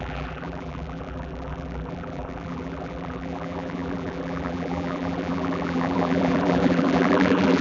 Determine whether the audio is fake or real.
fake